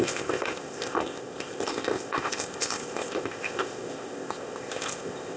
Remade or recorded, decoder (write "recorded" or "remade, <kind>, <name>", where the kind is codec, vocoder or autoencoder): remade, codec, ZipCodec